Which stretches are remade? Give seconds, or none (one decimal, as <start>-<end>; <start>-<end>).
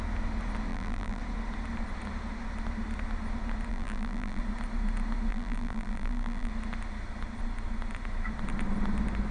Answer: 0.7-1.2; 3.7-4.4; 5.3-6.5